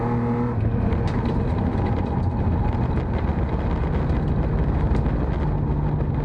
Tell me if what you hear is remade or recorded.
recorded